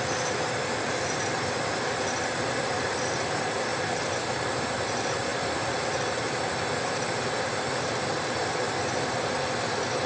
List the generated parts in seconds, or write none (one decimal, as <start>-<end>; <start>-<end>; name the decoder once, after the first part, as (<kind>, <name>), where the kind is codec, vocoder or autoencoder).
none